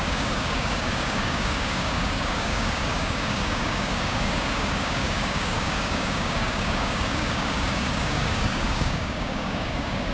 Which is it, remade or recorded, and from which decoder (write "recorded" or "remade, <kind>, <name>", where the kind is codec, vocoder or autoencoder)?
remade, codec, DAC